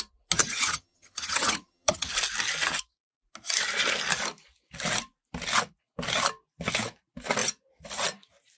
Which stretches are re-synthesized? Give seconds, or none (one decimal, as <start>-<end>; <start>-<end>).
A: 0.4-2.1